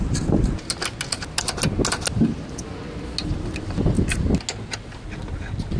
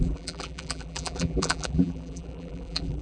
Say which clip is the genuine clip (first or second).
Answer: first